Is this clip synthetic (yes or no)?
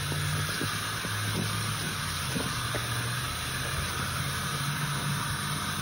no